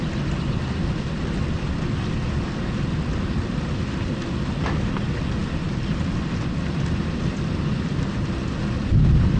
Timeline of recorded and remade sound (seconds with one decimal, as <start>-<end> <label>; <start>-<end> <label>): 0.0-9.4 recorded